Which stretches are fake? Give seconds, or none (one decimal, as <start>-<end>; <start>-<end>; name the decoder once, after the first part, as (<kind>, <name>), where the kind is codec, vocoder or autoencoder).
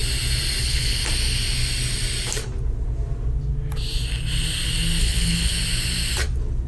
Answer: 0.6-1.0 (codec, HILCodec); 5.0-5.5